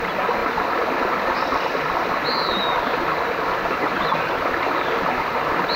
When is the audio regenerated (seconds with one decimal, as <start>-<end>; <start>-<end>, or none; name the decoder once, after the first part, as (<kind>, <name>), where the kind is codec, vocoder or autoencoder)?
none